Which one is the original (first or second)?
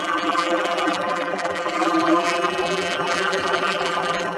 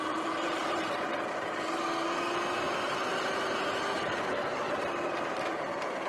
second